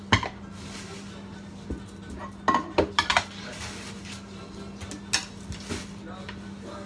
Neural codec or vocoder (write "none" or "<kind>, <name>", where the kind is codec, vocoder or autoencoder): none